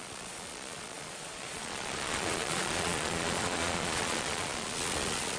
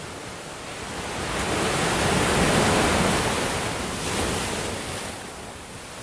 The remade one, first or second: first